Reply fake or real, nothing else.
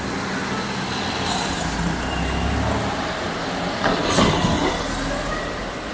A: real